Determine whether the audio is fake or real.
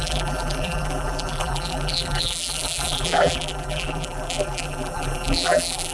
fake